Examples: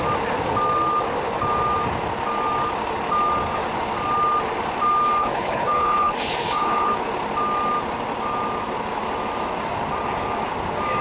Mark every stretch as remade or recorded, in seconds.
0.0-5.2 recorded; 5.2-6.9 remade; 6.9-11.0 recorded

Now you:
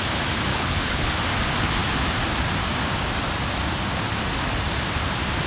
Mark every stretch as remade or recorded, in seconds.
0.0-0.5 recorded; 0.5-1.1 remade; 1.1-5.5 recorded

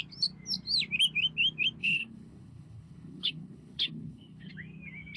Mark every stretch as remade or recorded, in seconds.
0.0-1.8 recorded; 1.8-4.5 remade; 4.5-5.2 recorded

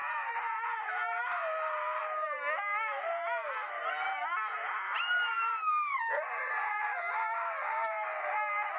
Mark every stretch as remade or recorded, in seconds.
0.0-8.8 recorded

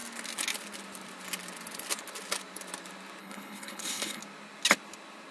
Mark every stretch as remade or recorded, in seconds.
0.0-3.2 recorded; 3.2-4.2 remade; 4.2-5.3 recorded